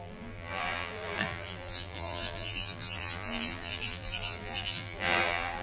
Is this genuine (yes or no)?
no